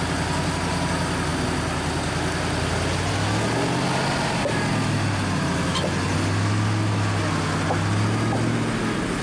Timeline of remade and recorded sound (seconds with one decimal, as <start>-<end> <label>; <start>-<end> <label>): 0.0-9.2 recorded